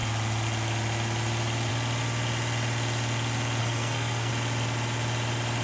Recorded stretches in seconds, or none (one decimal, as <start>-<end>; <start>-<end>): 0.0-3.6; 4.3-5.6